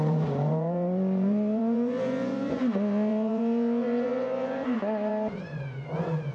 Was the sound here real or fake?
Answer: fake